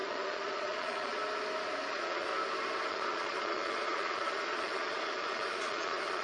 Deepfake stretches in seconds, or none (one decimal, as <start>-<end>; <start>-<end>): 0.0-1.2; 1.9-2.3; 2.9-6.2